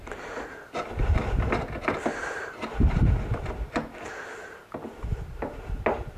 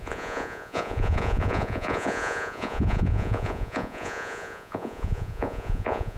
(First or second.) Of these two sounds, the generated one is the second